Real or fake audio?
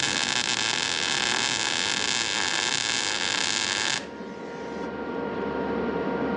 real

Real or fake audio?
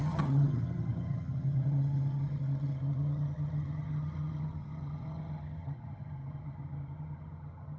fake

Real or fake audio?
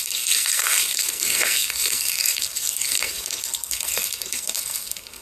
fake